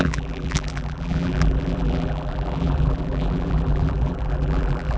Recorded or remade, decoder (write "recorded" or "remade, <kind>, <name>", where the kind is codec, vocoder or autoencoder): remade, vocoder, BigVGAN v2